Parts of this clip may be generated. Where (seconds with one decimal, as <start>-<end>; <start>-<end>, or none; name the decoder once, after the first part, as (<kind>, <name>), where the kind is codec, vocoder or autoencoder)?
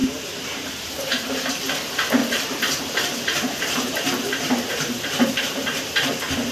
0.0-1.6 (vocoder, BigVGAN v2); 2.2-6.1